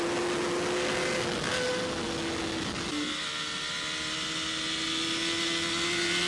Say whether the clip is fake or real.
real